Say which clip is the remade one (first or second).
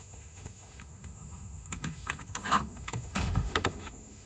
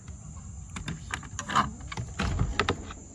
first